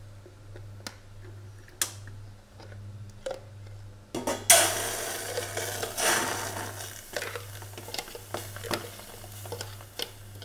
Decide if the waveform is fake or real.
real